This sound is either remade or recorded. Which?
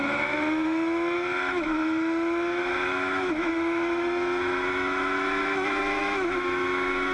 remade